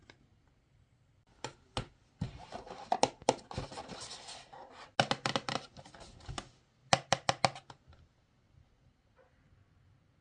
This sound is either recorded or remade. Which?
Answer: recorded